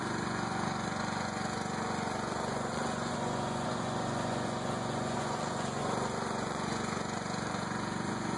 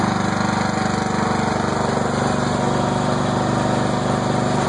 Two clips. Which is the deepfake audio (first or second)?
first